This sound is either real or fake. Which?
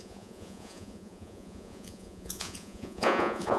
fake